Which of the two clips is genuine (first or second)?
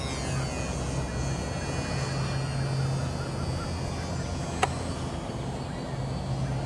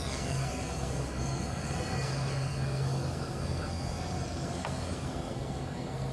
first